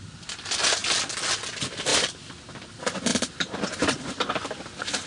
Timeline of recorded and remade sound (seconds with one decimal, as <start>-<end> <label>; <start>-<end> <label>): 0.0-1.9 recorded; 1.9-2.4 remade; 2.4-3.1 recorded; 3.1-3.7 remade; 3.7-5.1 recorded